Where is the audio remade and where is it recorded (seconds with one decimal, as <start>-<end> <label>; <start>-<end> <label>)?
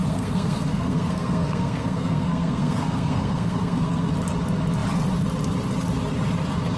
0.0-4.1 remade; 4.1-6.8 recorded